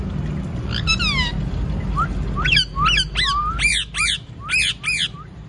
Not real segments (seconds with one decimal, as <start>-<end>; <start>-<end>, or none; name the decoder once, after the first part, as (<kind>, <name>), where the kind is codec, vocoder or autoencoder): none